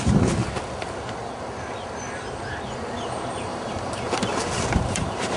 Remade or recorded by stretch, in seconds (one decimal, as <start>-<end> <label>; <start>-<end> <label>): 0.0-3.5 recorded; 3.5-5.4 remade